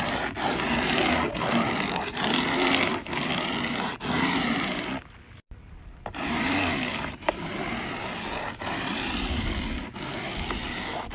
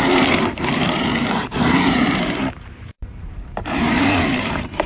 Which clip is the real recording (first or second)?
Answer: first